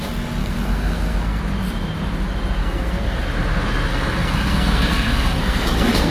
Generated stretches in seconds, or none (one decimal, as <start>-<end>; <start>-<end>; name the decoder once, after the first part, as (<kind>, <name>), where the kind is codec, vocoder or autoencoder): 0.4-1.4 (codec, SNAC); 2.6-3.2; 3.9-6.1